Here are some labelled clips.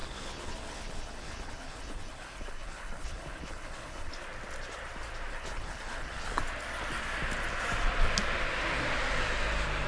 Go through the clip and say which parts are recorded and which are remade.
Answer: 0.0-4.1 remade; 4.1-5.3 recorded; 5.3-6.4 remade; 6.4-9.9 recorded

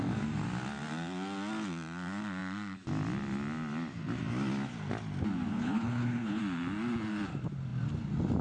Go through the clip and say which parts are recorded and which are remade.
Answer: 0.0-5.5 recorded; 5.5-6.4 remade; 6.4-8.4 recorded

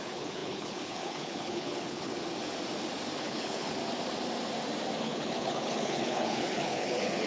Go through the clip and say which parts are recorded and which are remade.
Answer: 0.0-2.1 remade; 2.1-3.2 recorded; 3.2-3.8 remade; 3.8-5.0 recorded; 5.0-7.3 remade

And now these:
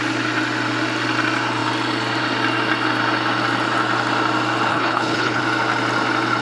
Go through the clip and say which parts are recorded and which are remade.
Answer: 0.0-4.7 recorded; 4.7-5.4 remade; 5.4-6.4 recorded

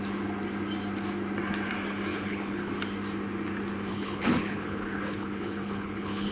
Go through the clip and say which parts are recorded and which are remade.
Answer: 0.0-2.1 recorded; 2.1-2.7 remade; 2.7-3.9 recorded; 3.9-6.3 remade

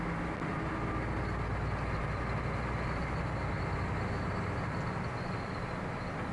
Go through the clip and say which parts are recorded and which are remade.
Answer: 0.0-6.3 recorded

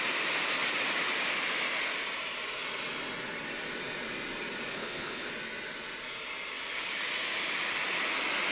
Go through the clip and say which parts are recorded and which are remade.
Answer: 0.0-4.7 recorded; 4.7-5.3 remade; 5.3-8.5 recorded